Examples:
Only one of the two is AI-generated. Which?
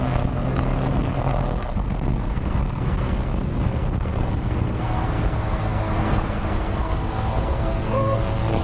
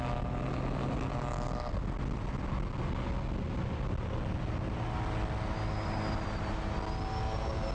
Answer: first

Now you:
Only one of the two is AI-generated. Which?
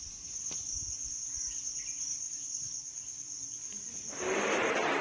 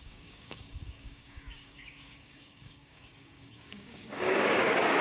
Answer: second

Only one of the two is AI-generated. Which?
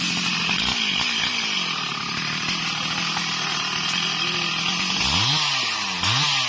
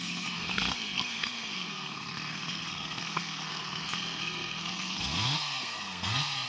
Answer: second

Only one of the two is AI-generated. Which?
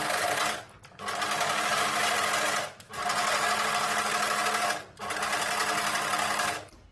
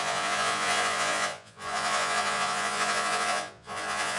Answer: second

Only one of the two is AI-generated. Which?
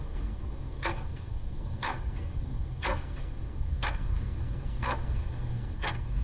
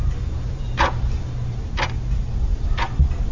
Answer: first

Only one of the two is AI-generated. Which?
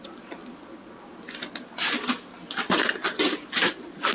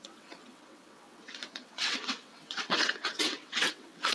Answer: second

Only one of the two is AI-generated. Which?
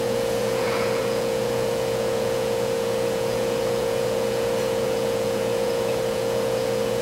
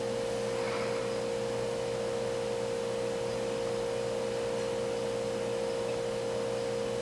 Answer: first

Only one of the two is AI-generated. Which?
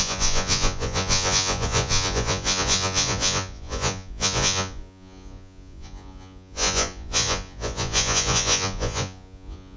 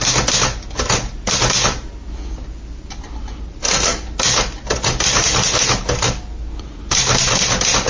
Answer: first